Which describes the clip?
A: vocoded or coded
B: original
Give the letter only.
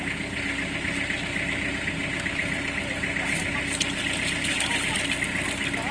B